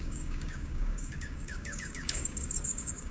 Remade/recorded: remade